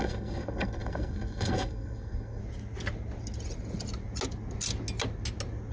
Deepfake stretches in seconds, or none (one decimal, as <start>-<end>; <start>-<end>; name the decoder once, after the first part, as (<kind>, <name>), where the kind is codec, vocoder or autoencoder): 0.0-2.4 (codec, SNAC)